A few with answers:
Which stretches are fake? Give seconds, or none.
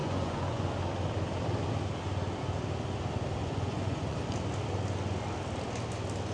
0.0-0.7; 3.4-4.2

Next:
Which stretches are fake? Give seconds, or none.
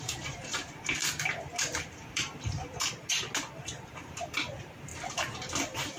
0.0-1.0; 1.8-2.6; 3.9-4.9; 5.6-6.0